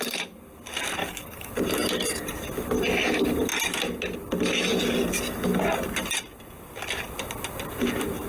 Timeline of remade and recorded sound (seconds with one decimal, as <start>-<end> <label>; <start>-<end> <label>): 0.0-1.0 recorded; 1.0-1.5 remade; 1.5-8.3 recorded